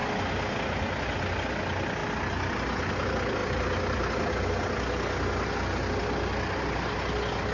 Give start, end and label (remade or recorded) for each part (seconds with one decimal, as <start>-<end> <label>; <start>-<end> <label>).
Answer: 0.0-7.5 recorded

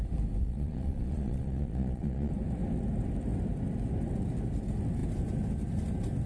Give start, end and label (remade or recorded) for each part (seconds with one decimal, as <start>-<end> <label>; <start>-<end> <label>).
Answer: 0.0-0.4 recorded; 0.4-2.3 remade; 2.3-6.3 recorded

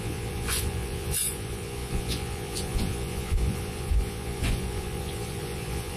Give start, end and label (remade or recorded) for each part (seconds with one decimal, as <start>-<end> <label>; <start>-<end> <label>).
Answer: 0.0-6.0 remade